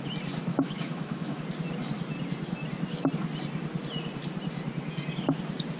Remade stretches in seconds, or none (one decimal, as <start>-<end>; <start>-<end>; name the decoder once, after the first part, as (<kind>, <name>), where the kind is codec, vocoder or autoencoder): 0.5-1.4 (autoencoder, DAC-VAE)

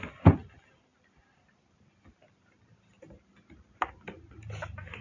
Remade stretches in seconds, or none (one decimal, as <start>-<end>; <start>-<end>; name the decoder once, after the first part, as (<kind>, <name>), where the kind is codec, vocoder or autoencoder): none

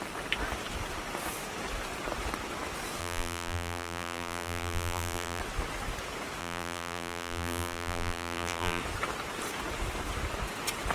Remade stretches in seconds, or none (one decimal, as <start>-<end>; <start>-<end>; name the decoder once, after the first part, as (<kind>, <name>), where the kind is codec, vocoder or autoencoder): 3.0-5.4 (vocoder, BigVGAN v2); 6.4-8.8

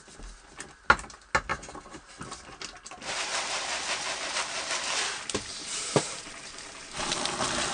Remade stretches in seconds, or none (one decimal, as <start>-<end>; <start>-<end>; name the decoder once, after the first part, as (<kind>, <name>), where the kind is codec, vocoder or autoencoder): 1.5-2.0 (vocoder, BigVGAN v2); 5.5-7.2